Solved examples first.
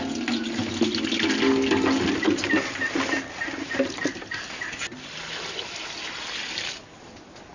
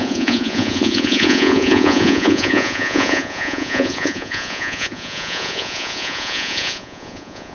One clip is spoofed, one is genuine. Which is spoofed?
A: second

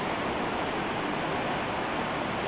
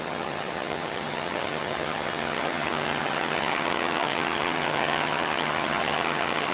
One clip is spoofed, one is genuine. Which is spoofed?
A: second